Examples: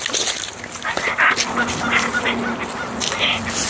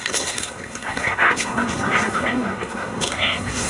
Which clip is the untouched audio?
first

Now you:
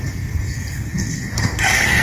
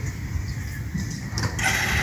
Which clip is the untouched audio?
second